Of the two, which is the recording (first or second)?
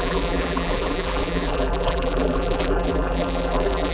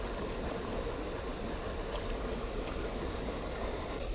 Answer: second